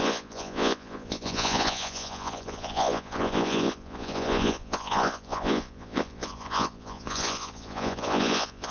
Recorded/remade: remade